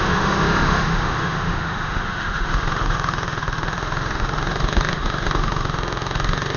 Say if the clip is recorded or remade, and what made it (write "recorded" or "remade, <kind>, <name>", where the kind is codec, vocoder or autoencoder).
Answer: remade, autoencoder, DAC-VAE